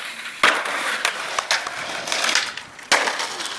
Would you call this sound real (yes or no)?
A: yes